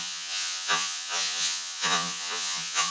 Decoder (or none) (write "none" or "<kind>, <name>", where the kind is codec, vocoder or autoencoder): vocoder, Vocos